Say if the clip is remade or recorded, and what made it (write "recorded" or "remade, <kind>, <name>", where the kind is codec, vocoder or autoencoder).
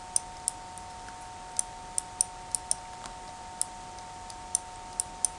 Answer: recorded